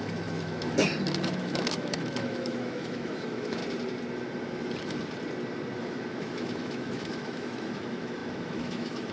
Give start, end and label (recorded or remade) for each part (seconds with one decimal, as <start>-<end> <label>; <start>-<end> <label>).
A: 0.0-0.9 remade; 0.9-1.4 recorded; 1.4-3.6 remade; 3.6-5.8 recorded; 5.8-9.1 remade